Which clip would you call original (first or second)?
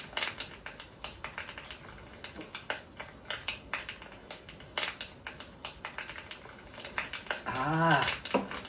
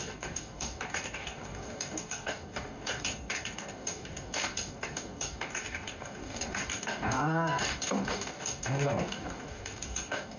first